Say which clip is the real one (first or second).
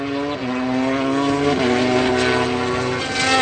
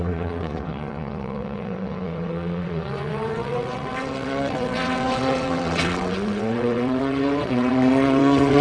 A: first